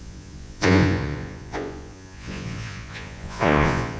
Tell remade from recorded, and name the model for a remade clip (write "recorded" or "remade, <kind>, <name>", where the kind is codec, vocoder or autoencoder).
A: remade, vocoder, Vocos